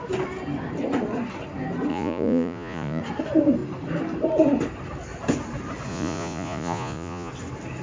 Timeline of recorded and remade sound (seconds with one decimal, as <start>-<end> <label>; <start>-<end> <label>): 0.0-1.9 recorded; 1.9-3.0 remade; 3.0-5.9 recorded; 5.9-7.3 remade; 7.3-7.8 recorded